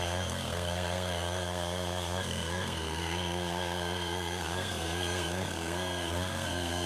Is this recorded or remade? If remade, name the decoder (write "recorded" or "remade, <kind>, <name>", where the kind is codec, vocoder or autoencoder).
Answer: remade, codec, SNAC